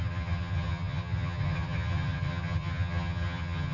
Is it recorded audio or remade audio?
remade